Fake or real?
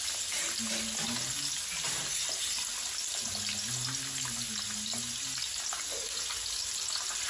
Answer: real